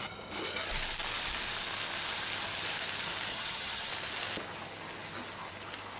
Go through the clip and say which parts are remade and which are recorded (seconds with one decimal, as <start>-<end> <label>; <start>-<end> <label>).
0.0-3.3 recorded; 3.3-3.9 remade; 3.9-6.0 recorded